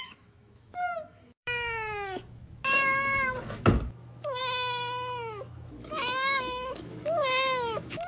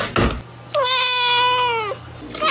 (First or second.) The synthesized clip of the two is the first